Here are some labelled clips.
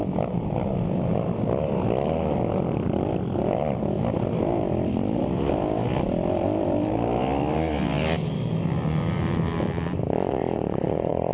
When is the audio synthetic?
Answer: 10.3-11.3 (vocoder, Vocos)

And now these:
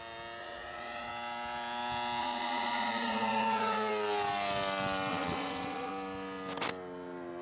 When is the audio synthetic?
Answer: 0.4-1.1 (vocoder, Vocos); 2.2-3.9; 5.1-5.9

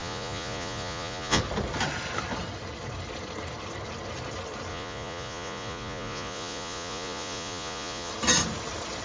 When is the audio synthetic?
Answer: 0.0-1.4 (vocoder, Vocos); 4.7-8.1

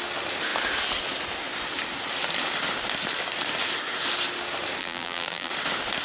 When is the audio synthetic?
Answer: 4.8-5.5 (vocoder, BigVGAN v2)

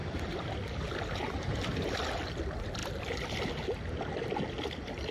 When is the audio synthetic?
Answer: none

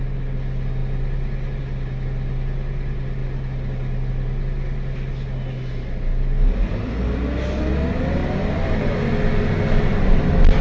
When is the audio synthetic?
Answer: none

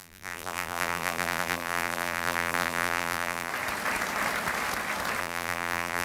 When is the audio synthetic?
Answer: 0.0-3.5 (vocoder, BigVGAN v2); 5.2-6.0